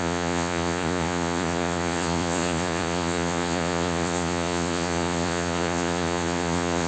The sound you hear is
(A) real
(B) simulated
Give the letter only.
B